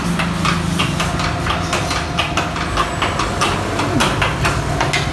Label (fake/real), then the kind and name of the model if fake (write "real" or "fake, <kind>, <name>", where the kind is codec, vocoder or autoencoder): real